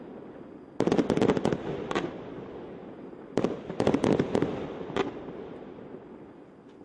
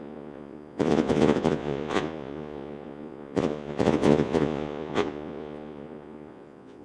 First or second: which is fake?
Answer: second